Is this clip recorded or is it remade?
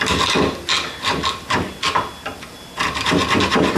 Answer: recorded